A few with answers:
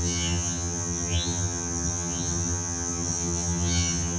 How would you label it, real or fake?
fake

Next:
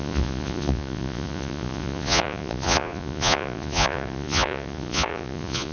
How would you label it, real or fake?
fake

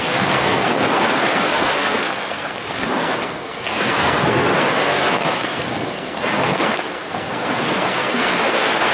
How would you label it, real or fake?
fake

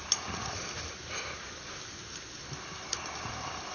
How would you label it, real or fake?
real